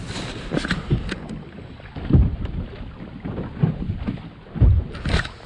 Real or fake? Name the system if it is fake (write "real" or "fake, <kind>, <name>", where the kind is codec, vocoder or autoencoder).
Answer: real